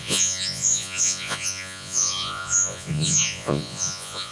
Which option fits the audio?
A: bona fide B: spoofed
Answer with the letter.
B